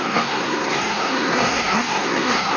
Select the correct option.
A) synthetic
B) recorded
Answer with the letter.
A